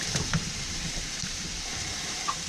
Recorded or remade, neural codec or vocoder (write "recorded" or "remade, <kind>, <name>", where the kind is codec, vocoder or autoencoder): remade, vocoder, BigVGAN v2